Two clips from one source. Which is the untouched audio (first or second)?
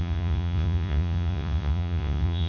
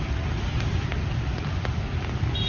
second